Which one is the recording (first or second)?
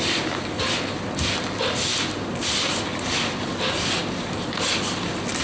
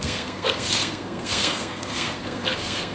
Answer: first